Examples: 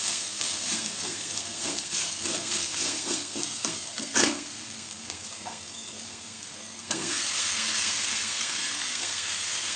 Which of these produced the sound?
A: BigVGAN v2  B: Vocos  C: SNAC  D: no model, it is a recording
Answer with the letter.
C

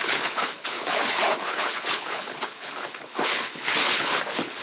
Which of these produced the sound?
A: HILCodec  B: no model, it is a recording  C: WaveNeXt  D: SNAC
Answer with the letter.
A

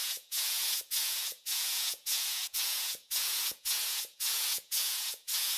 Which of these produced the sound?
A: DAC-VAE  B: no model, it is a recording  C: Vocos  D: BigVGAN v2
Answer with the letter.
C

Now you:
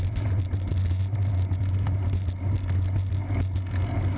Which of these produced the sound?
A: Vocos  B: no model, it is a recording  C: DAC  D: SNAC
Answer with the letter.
B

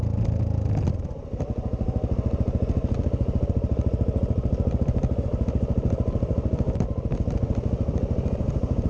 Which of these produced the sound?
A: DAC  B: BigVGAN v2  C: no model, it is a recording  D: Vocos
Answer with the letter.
C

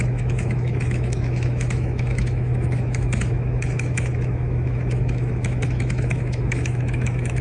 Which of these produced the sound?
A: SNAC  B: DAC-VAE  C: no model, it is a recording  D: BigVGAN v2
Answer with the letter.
B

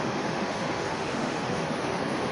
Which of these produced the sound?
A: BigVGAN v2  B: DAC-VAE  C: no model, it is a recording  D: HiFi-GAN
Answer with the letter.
B